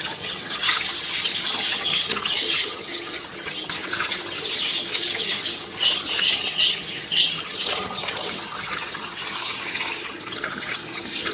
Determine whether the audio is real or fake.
fake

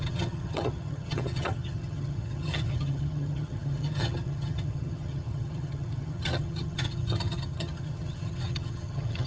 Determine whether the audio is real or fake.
fake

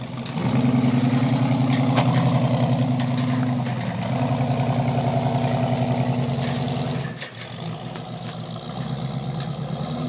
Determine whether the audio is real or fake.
real